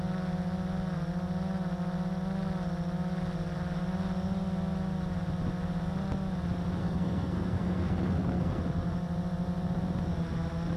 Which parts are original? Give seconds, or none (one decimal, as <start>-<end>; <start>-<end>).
0.0-6.8; 8.6-10.8